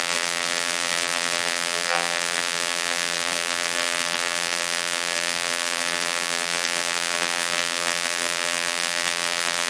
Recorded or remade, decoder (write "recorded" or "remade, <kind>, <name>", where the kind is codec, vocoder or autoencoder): remade, vocoder, BigVGAN v2